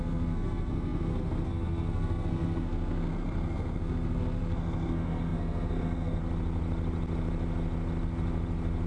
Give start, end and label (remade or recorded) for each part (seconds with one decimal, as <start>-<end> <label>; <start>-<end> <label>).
0.0-6.2 remade; 6.2-8.9 recorded